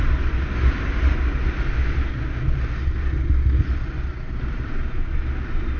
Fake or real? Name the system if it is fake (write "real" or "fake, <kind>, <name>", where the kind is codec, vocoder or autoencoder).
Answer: real